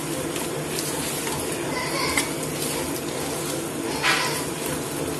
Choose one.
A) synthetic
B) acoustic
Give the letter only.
B